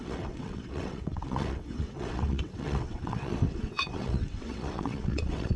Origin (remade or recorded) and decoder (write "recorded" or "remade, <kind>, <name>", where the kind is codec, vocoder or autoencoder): remade, vocoder, WaveNeXt